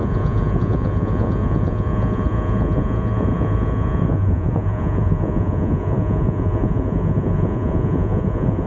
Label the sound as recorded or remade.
remade